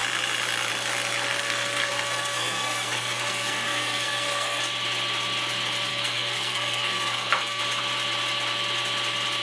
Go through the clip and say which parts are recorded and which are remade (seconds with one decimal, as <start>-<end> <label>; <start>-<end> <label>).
0.0-1.3 recorded; 1.3-4.6 remade; 4.6-5.9 recorded; 5.9-7.6 remade; 7.6-9.4 recorded